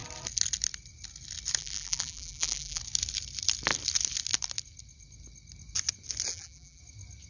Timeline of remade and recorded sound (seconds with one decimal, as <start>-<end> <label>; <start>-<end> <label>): 0.0-1.6 recorded; 1.6-2.8 remade; 2.8-6.3 recorded; 6.3-6.8 remade; 6.8-7.3 recorded